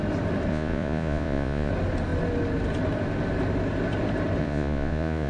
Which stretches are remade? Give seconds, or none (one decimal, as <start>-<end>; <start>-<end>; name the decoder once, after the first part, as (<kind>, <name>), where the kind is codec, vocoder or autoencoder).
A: 0.5-1.7 (vocoder, Vocos); 4.4-5.3